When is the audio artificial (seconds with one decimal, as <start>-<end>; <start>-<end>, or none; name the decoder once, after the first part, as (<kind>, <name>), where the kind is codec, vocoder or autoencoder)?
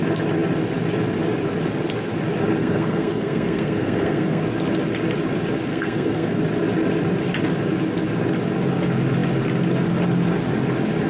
2.6-4.4 (codec, SNAC); 5.7-6.4